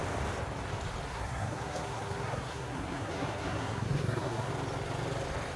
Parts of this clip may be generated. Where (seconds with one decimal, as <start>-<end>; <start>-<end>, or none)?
1.1-4.5